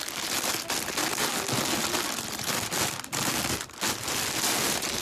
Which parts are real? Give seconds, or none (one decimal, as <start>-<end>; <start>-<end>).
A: 0.0-5.0